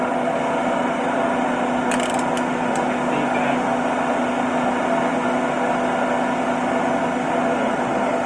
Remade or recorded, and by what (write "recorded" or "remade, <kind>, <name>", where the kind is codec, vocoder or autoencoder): recorded